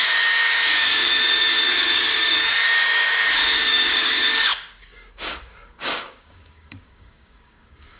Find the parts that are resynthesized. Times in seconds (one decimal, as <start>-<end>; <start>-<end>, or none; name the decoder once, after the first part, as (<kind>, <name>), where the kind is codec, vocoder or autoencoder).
0.0-8.0 (codec, DAC)